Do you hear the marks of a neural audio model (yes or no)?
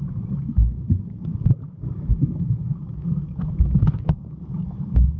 yes